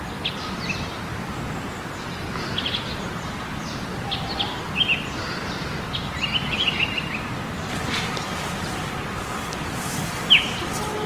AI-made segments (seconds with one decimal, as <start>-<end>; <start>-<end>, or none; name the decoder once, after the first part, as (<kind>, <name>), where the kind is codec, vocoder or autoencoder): none